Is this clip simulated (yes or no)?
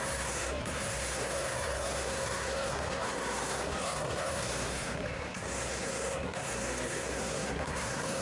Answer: yes